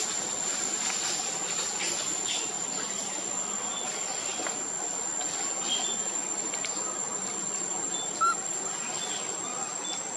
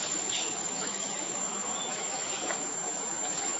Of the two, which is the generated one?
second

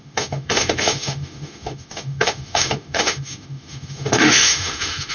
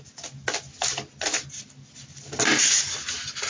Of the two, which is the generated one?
first